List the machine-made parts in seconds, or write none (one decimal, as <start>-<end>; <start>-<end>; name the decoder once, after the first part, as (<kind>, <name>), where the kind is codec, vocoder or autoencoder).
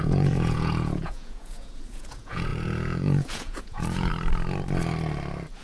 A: 0.0-4.1 (vocoder, Vocos)